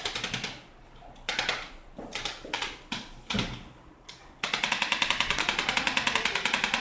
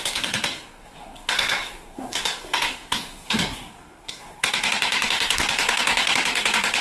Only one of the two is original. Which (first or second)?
first